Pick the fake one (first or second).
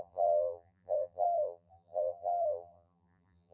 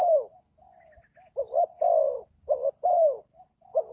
first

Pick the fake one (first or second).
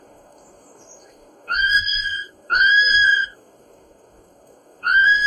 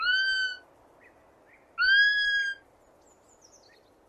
first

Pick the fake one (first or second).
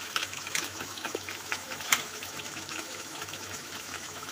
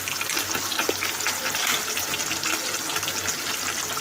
first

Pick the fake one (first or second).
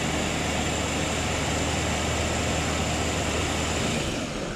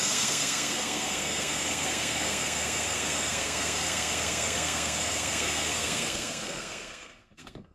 second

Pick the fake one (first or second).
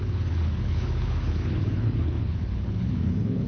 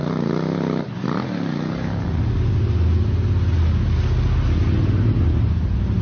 first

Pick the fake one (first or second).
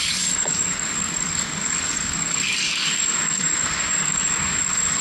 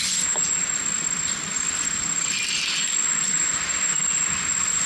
first